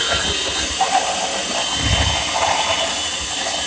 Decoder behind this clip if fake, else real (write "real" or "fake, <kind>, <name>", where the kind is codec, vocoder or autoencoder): real